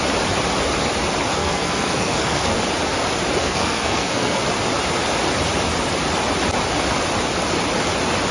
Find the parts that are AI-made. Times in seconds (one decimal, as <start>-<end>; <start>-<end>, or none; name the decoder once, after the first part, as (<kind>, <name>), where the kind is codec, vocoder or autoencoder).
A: 1.3-2.6 (codec, SNAC); 3.4-4.4